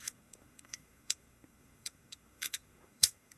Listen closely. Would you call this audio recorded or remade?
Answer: remade